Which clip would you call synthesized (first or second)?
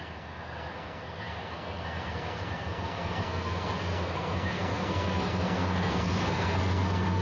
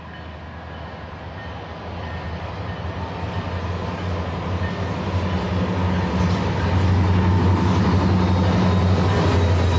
first